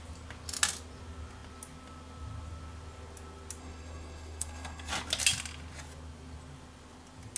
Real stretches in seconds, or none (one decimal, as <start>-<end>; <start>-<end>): 0.0-3.6; 4.9-7.4